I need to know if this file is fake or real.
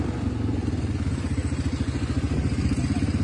real